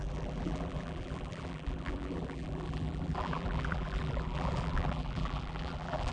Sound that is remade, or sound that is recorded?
remade